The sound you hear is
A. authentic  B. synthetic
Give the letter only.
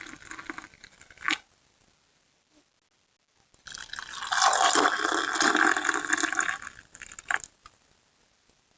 A